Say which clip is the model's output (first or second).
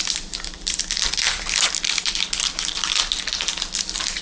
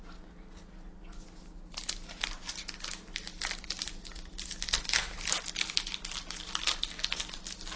first